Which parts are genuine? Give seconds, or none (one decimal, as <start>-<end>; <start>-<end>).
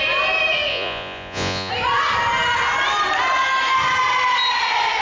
0.0-0.7; 1.7-5.0